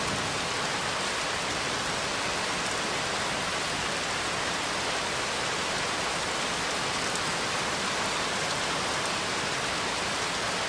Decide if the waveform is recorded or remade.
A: recorded